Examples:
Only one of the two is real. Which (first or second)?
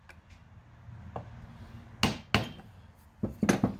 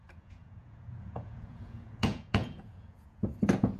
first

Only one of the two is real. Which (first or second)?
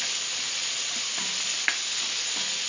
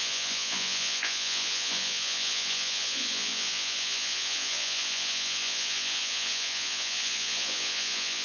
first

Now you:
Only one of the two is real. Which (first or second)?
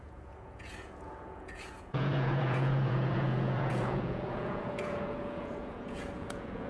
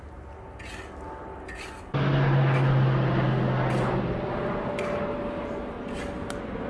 second